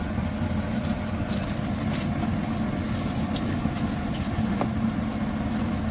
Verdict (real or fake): real